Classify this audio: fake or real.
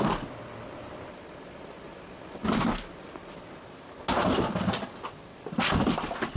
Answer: real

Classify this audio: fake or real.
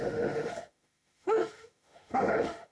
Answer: fake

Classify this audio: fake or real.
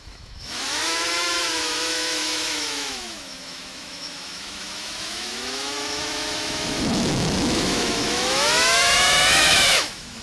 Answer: fake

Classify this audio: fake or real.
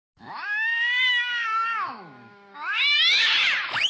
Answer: fake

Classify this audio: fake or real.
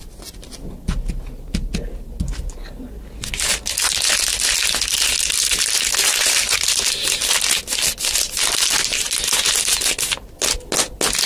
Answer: real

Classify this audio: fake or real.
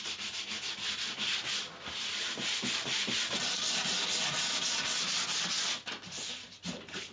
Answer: real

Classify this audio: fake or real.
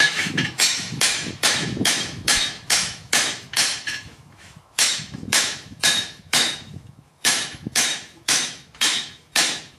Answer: fake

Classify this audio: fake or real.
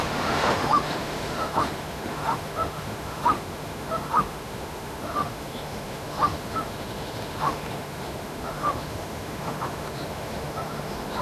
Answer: fake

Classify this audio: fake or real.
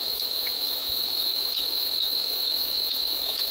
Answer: fake